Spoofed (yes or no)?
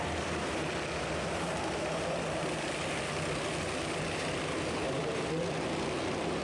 no